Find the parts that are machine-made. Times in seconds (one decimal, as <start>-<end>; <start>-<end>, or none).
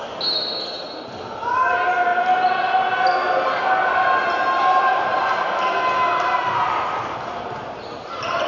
none